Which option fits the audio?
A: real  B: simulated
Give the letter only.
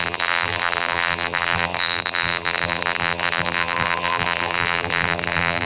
B